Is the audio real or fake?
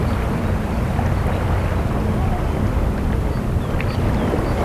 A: real